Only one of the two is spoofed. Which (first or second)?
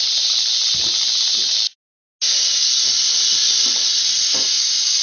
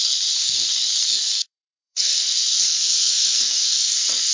second